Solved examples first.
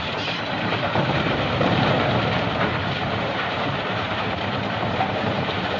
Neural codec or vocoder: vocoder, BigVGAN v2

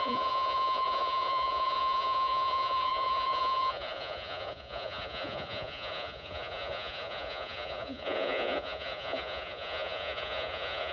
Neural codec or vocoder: vocoder, Vocos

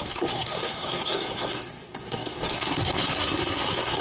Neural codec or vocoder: codec, SNAC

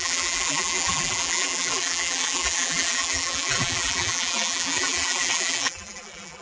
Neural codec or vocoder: vocoder, BigVGAN v2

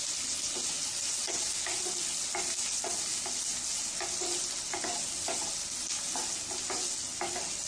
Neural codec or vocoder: none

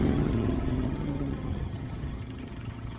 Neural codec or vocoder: vocoder, HiFi-GAN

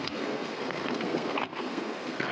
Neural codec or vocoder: codec, SNAC